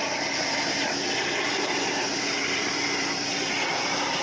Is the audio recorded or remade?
remade